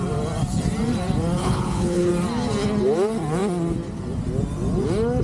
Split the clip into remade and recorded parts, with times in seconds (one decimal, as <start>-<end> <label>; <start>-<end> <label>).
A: 0.0-1.4 recorded; 1.4-2.1 remade; 2.1-5.2 recorded